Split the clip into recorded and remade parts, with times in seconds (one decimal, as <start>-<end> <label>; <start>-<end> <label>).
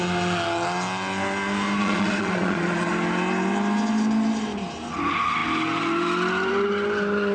0.0-1.8 recorded; 1.8-2.9 remade; 2.9-7.3 recorded